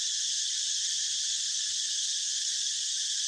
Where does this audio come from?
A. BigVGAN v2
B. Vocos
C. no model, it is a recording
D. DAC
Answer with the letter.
A